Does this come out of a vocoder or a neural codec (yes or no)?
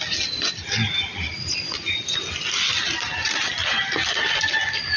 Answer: no